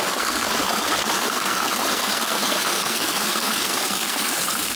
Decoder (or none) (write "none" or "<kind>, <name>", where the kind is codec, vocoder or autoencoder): codec, SNAC